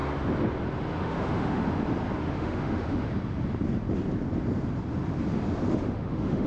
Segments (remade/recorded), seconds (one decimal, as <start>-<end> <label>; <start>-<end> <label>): 0.0-1.0 recorded; 1.0-1.6 remade; 1.6-2.2 recorded; 2.2-3.1 remade; 3.1-5.7 recorded; 5.7-6.5 remade